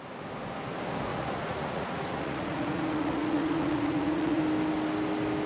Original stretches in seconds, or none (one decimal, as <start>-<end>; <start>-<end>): 0.0-1.1; 4.4-5.5